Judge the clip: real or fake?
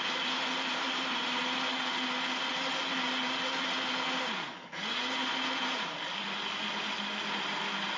real